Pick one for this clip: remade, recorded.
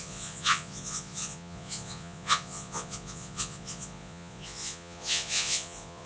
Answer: remade